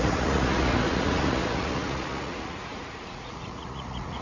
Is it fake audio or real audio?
fake